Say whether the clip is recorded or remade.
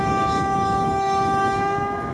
remade